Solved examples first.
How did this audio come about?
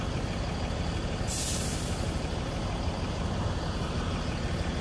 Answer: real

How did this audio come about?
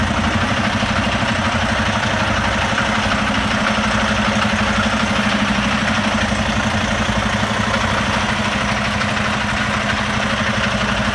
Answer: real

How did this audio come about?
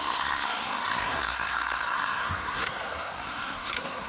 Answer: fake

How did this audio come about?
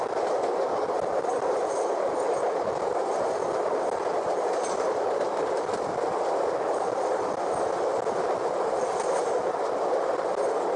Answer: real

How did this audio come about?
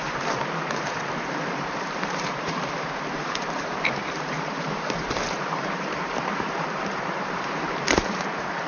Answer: fake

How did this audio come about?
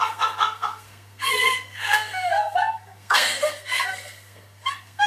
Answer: fake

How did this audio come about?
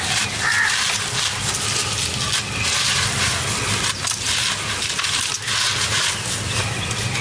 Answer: real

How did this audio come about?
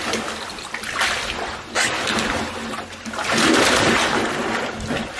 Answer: real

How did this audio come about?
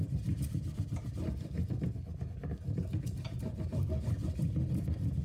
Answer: real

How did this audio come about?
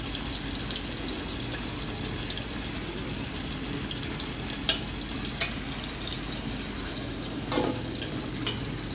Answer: real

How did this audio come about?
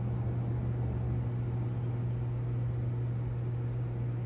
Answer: real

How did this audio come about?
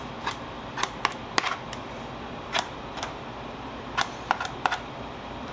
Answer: fake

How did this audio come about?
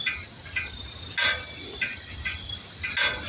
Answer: real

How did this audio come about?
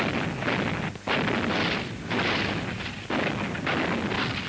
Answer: real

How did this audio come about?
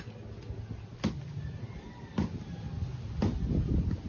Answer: real